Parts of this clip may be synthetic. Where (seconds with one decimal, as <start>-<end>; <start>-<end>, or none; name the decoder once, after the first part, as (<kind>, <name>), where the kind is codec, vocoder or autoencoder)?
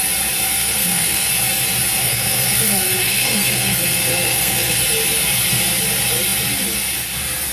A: 0.5-1.3 (codec, SNAC); 2.0-4.8